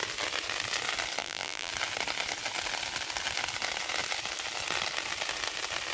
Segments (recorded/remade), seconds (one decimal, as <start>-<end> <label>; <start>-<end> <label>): 0.0-1.2 recorded; 1.2-1.7 remade; 1.7-5.9 recorded